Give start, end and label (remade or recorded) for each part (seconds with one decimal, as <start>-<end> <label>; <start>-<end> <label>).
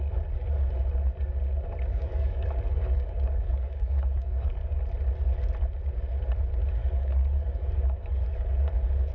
0.0-1.9 recorded; 1.9-4.8 remade; 4.8-6.8 recorded; 6.8-8.7 remade; 8.7-9.1 recorded